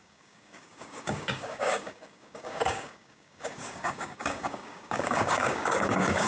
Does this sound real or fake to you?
fake